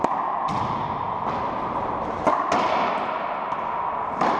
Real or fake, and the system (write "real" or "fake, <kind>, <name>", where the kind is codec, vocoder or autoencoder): real